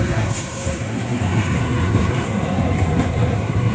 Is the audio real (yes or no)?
no